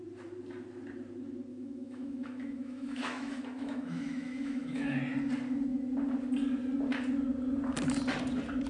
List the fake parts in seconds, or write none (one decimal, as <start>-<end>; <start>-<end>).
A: 1.5-5.0